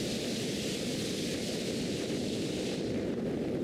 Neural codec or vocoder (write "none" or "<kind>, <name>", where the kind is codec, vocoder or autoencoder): none